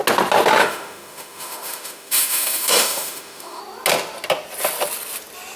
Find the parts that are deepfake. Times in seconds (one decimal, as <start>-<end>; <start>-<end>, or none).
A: 0.6-3.6